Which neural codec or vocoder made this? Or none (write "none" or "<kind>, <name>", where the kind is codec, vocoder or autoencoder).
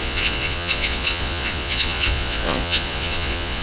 vocoder, Vocos